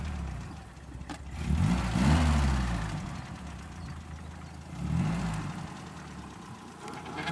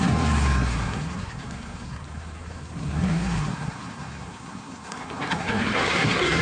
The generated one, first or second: second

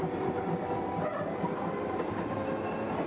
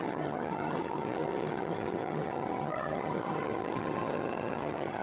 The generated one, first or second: second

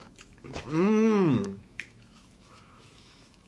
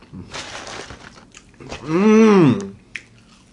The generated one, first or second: first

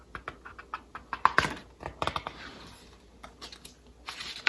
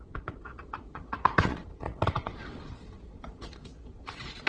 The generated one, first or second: second